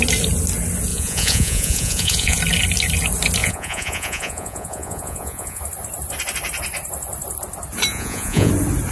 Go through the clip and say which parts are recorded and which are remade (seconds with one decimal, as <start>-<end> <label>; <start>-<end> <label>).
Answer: 0.0-0.9 recorded; 0.9-2.4 remade; 2.4-3.4 recorded; 3.4-5.6 remade; 5.6-7.9 recorded; 7.9-8.5 remade; 8.5-8.9 recorded